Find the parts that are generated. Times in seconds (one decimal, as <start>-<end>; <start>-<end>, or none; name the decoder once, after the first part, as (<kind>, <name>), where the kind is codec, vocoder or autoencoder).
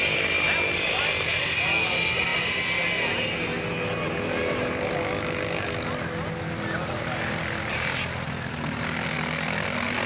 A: none